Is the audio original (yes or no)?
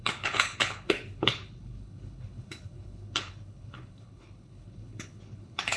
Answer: no